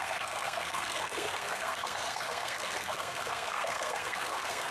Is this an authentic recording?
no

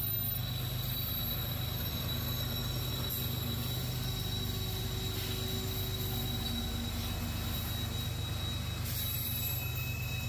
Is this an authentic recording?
yes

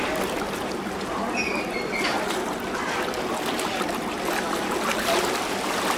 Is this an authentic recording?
yes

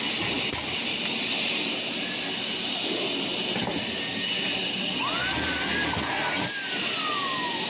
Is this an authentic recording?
yes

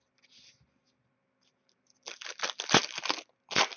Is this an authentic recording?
yes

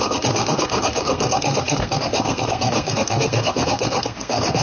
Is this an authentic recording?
no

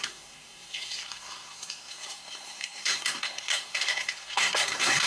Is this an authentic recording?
no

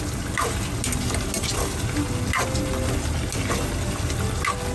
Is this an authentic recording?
yes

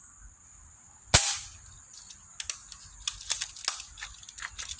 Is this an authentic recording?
yes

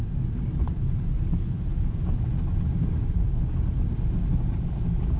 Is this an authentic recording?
yes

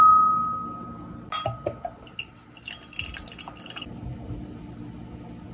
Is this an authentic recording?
yes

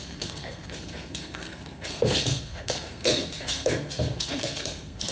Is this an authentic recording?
no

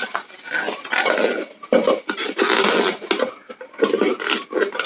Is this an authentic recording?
yes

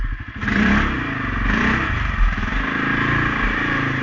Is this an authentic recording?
yes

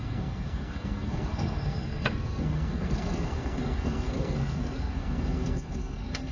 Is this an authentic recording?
no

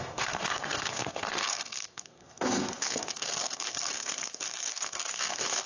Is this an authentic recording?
no